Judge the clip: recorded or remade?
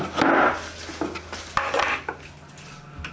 recorded